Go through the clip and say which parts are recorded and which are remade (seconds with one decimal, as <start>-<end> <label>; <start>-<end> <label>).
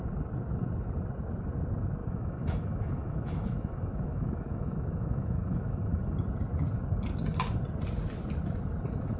0.0-2.0 recorded; 2.0-5.8 remade; 5.8-9.2 recorded